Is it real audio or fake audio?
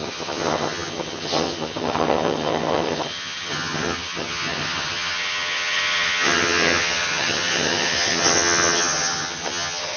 fake